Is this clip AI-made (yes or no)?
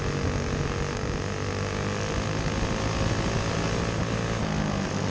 no